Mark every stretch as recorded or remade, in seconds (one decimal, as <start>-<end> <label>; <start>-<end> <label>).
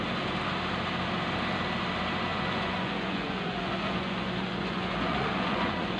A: 0.0-2.3 recorded; 2.3-6.0 remade